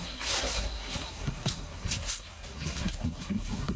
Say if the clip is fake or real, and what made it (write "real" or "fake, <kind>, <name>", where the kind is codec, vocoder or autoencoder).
fake, codec, SNAC